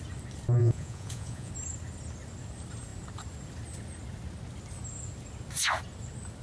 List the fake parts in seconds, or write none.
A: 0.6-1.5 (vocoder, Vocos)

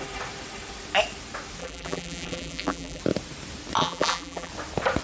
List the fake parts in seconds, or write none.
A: 1.6-3.0 (vocoder, BigVGAN v2); 3.8-4.5

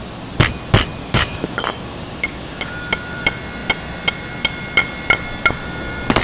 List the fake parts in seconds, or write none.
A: 1.0-2.7 (codec, DAC)

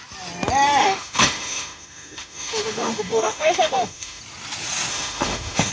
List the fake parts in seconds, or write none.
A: 0.8-4.2 (autoencoder, DAC-VAE); 4.9-5.7

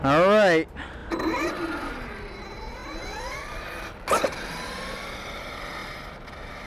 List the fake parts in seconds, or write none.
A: 1.0-1.9 (vocoder, BigVGAN v2)